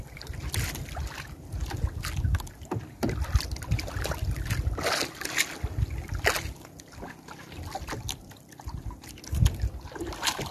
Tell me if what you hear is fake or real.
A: real